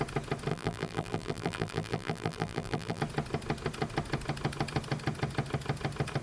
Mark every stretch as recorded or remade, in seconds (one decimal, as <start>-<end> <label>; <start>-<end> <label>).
0.0-0.5 recorded; 0.5-3.0 remade; 3.0-6.2 recorded